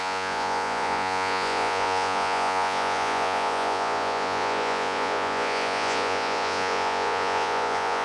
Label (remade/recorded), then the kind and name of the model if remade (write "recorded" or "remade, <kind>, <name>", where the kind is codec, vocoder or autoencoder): remade, vocoder, Vocos